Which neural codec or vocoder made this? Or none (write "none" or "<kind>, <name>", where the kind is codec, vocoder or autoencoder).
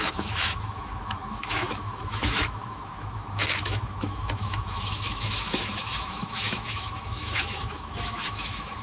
autoencoder, DAC-VAE